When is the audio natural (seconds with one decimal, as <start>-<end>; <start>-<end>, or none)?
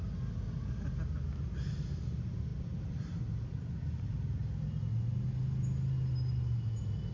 0.0-7.1